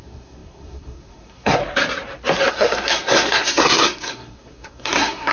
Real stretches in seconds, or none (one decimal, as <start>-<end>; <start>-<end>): 1.6-2.5